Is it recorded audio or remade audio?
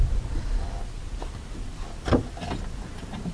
recorded